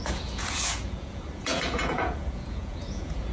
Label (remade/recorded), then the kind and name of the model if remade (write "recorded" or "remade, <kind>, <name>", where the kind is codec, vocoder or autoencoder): remade, vocoder, Vocos